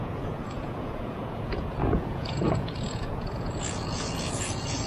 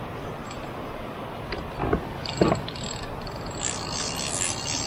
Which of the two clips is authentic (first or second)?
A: second